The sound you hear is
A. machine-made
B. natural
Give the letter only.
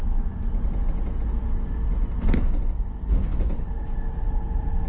B